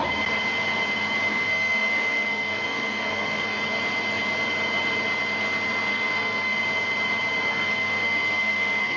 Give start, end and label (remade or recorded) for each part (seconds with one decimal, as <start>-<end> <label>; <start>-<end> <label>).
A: 0.0-1.3 recorded; 1.3-3.6 remade; 3.6-5.9 recorded; 5.9-6.6 remade; 6.6-7.5 recorded; 7.5-9.0 remade